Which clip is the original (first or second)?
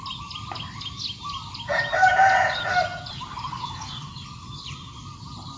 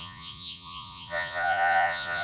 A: first